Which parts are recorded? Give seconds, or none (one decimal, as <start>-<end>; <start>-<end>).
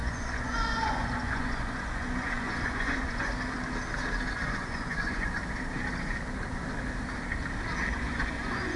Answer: 3.3-4.3; 5.4-8.0